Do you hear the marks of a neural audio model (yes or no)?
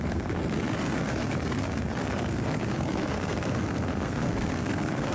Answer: yes